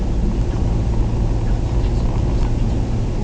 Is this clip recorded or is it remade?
recorded